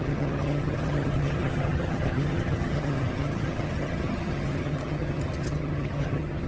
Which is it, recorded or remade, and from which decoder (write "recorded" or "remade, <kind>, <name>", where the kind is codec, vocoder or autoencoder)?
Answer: remade, vocoder, HiFi-GAN